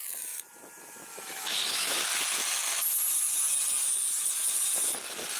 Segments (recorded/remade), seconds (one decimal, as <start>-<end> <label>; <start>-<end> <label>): 0.0-1.1 recorded; 1.1-2.0 remade; 2.0-5.4 recorded